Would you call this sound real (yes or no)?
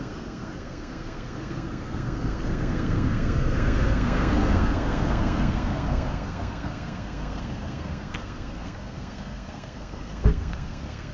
no